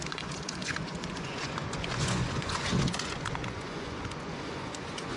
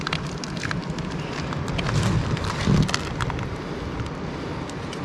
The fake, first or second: first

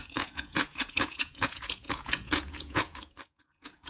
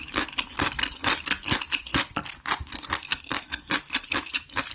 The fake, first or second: first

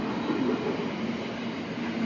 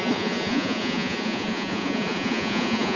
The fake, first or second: second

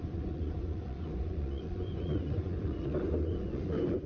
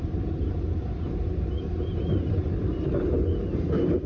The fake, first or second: first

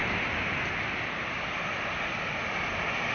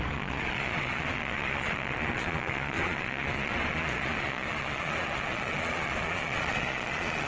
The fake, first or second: second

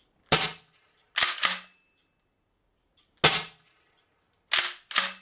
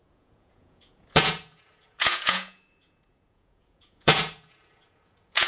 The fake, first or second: second